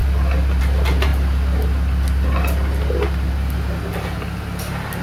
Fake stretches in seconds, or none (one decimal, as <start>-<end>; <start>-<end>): none